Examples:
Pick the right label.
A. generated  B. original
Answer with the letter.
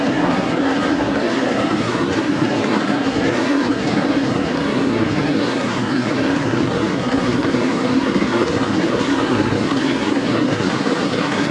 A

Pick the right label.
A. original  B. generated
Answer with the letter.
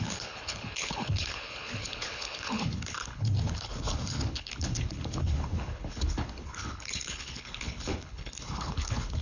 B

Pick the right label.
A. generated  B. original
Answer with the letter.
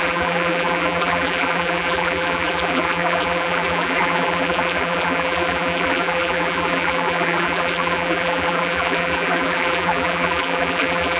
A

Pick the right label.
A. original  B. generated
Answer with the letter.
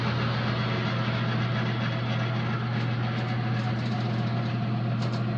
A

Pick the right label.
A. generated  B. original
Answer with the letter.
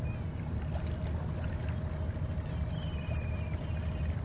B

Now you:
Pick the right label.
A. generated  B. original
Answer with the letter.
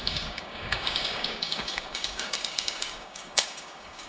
A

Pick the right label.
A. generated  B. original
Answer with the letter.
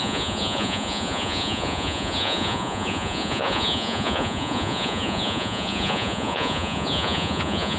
A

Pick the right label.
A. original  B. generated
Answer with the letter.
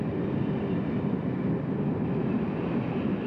A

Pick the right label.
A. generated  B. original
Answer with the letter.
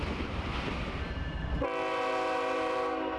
B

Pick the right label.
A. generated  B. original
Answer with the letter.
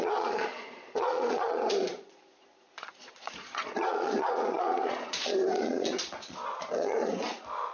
A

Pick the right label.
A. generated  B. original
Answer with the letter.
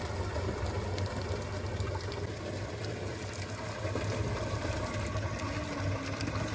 B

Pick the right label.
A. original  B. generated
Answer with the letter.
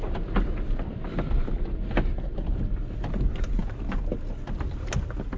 A